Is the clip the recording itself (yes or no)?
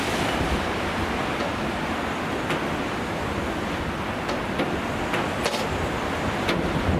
yes